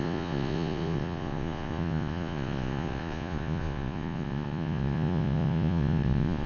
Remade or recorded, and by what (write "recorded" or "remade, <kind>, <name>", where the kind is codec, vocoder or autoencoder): remade, vocoder, Vocos